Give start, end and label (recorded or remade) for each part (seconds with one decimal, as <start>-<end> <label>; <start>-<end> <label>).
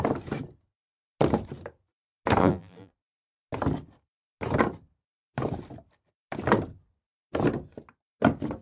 0.0-2.4 recorded; 2.4-2.9 remade; 2.9-8.6 recorded